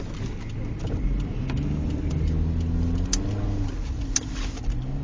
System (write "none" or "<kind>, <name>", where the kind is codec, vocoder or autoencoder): none